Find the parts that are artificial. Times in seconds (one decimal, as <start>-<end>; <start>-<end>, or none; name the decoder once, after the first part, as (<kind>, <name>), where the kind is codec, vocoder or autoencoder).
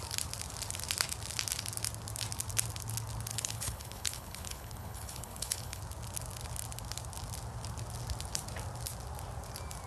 3.3-5.8 (codec, HILCodec)